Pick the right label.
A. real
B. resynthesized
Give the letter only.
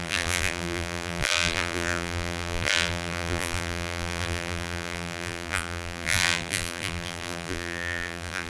B